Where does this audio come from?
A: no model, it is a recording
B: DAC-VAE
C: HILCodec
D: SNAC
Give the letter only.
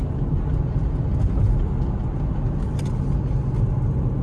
A